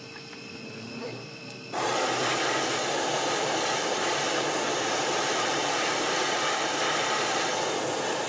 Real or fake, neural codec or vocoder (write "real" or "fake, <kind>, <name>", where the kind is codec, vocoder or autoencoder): fake, vocoder, BigVGAN v2